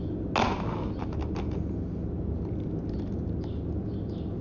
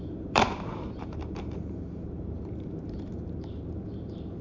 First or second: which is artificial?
second